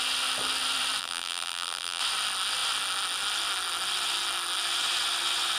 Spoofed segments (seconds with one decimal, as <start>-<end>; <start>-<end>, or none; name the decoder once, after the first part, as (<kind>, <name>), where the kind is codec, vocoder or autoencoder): 1.0-2.0 (vocoder, BigVGAN v2)